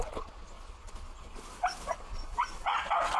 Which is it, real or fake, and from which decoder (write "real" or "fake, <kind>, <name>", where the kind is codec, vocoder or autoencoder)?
real